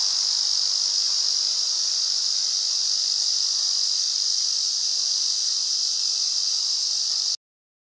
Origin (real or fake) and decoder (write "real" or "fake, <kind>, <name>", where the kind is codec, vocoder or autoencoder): real